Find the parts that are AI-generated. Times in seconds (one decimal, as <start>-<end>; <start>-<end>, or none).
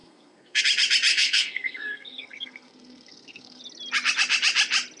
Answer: 0.0-0.6; 1.1-3.6